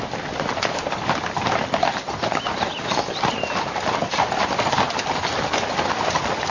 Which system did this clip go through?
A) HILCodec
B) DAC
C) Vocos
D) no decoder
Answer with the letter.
D